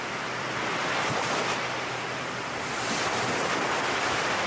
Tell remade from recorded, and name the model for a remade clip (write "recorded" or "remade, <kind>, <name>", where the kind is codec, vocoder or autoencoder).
recorded